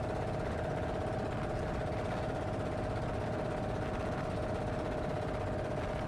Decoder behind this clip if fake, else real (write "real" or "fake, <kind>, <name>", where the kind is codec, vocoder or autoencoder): real